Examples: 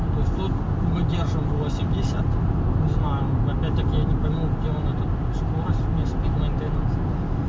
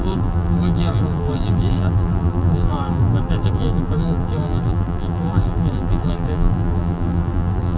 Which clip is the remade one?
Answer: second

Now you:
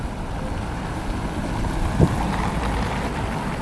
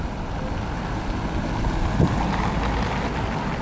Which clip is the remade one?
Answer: first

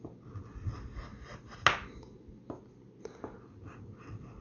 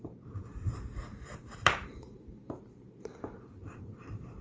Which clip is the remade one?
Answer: second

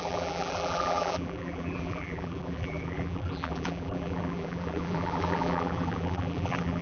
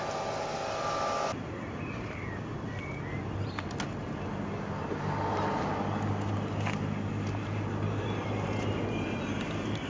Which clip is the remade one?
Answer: first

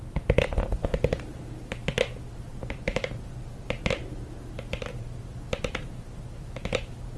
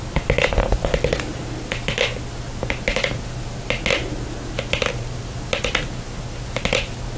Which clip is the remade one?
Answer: first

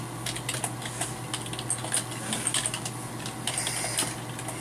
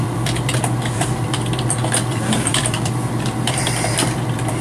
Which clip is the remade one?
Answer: second